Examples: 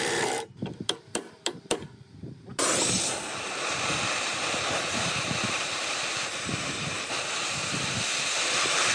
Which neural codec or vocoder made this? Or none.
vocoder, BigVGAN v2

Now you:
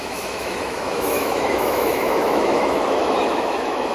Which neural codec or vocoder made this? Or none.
autoencoder, DAC-VAE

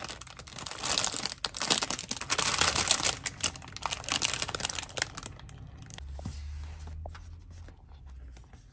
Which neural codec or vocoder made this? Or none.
none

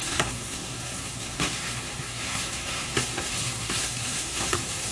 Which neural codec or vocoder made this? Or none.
codec, SNAC